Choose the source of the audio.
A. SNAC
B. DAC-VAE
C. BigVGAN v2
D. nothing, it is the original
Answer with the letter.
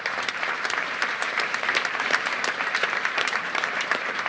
C